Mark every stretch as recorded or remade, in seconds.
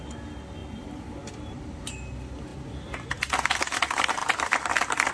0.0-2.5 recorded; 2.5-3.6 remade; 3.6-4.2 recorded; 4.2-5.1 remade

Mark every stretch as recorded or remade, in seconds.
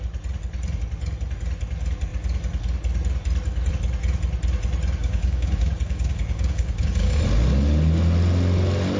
0.0-5.0 recorded; 5.0-7.2 remade; 7.2-9.0 recorded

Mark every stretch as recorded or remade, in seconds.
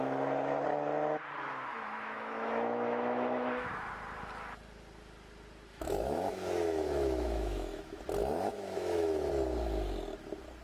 0.0-1.7 recorded; 1.7-3.9 remade; 3.9-5.7 recorded; 5.7-8.0 remade; 8.0-8.5 recorded; 8.5-9.3 remade; 9.3-10.6 recorded